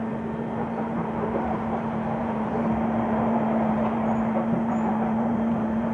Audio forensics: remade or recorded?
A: remade